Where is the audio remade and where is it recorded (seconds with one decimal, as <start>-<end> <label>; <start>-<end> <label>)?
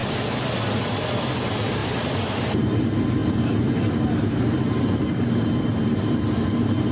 0.0-1.4 recorded; 1.4-6.9 remade